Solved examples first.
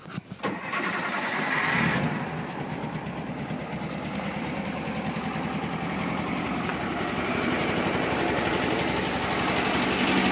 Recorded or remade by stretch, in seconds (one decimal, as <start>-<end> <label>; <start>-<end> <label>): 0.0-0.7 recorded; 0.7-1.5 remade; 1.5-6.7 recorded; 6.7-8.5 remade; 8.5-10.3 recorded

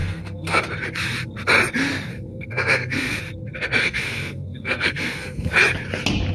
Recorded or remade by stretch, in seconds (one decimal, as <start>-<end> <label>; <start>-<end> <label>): 0.0-0.6 remade; 0.6-2.1 recorded; 2.1-3.2 remade; 3.2-3.8 recorded; 3.8-5.5 remade; 5.5-6.3 recorded

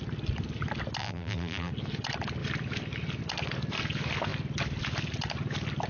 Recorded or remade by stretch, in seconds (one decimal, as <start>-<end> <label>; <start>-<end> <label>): 0.0-1.0 recorded; 1.0-1.7 remade; 1.7-5.9 recorded

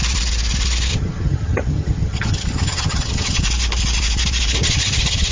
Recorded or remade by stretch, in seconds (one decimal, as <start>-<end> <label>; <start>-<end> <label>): 0.0-0.9 recorded; 0.9-3.4 remade; 3.4-4.6 recorded; 4.6-5.3 remade